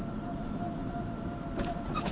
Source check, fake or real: fake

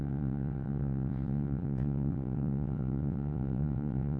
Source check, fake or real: fake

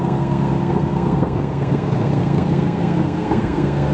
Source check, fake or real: fake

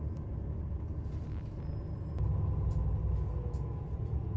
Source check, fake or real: real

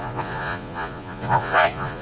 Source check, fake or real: fake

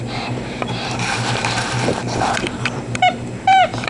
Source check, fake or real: fake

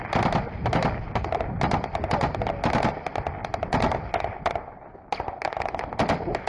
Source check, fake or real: real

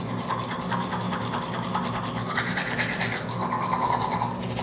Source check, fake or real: real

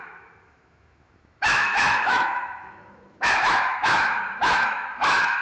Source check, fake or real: fake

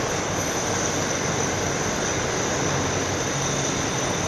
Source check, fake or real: real